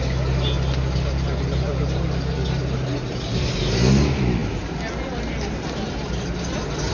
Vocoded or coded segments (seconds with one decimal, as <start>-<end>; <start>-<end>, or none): none